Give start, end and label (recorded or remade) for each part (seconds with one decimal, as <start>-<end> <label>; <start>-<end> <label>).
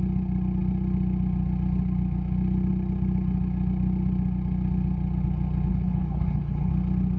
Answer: 0.0-5.7 recorded; 5.7-6.7 remade; 6.7-7.2 recorded